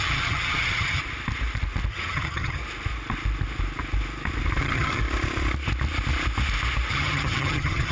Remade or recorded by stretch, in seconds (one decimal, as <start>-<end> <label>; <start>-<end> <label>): 0.0-1.0 remade; 1.0-1.9 recorded; 1.9-2.6 remade; 2.6-4.6 recorded; 4.6-5.0 remade; 5.0-6.9 recorded; 6.9-7.9 remade